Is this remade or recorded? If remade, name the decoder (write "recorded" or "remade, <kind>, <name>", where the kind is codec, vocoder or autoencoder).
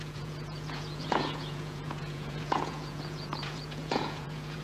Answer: remade, vocoder, Vocos